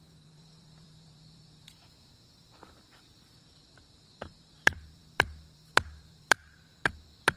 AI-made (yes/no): yes